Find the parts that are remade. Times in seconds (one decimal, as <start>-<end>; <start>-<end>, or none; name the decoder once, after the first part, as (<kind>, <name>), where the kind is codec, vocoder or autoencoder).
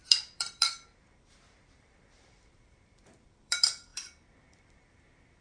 0.0-5.4 (vocoder, BigVGAN v2)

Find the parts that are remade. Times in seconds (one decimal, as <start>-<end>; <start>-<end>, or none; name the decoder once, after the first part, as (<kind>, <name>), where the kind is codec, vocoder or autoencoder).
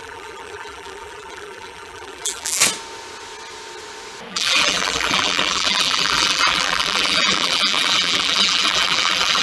0.0-2.6 (vocoder, BigVGAN v2); 4.3-9.4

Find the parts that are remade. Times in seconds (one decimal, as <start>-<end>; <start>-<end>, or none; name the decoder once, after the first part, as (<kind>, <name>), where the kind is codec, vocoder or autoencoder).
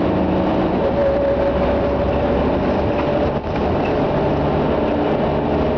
none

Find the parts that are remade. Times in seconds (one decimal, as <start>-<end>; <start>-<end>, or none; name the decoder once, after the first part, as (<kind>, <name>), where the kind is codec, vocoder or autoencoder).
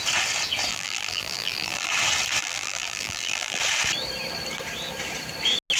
0.7-1.9 (vocoder, BigVGAN v2); 2.4-3.6